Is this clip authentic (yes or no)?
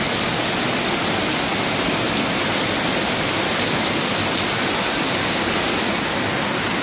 yes